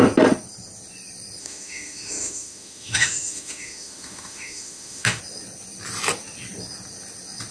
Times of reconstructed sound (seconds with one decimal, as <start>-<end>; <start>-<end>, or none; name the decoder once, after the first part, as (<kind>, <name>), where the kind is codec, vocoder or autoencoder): 1.4-5.2 (autoencoder, DAC-VAE)